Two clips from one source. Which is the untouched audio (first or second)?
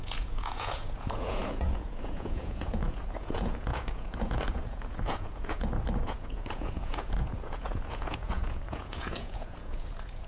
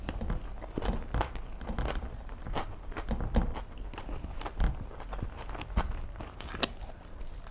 second